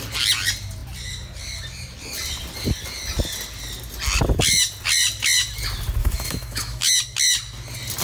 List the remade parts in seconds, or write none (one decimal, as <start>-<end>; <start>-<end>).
6.0-6.9